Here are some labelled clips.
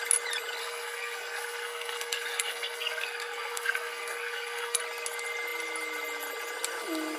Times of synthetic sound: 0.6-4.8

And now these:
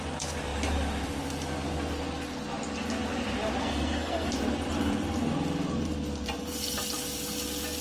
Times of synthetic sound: 3.6-4.3

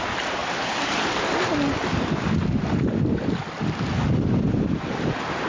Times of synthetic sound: none